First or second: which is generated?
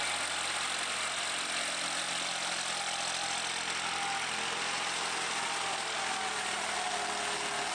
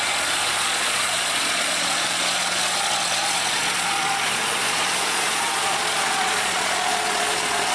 second